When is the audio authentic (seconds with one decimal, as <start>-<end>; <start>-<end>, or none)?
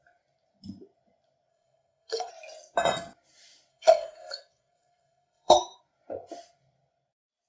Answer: 0.0-1.5; 2.3-3.7; 5.8-7.5